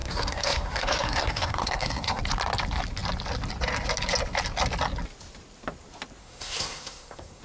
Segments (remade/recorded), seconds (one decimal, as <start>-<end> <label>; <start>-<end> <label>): 0.0-2.2 remade; 2.2-6.2 recorded; 6.2-7.4 remade